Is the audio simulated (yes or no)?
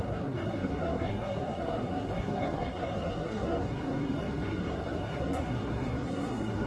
yes